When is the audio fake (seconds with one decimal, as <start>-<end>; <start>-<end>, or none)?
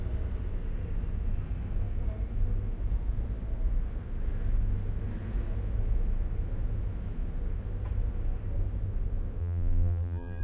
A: 9.4-10.4